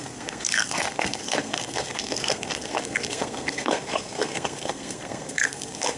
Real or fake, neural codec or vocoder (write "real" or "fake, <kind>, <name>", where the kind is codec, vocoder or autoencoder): fake, codec, SNAC